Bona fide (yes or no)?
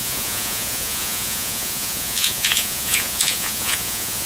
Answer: no